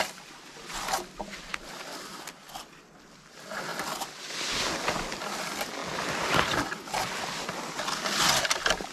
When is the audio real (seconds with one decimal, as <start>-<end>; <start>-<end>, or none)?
0.0-8.9